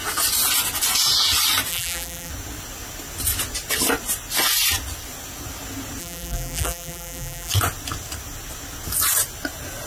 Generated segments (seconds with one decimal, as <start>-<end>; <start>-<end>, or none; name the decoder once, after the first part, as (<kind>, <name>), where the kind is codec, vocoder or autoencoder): 1.7-2.3 (vocoder, BigVGAN v2); 6.0-7.5